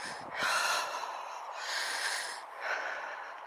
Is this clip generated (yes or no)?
no